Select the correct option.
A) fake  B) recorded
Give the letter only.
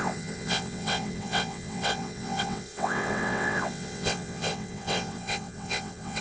A